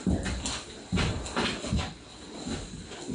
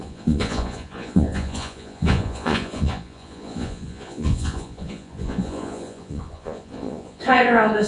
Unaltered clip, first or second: first